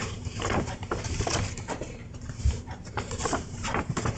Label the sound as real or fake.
fake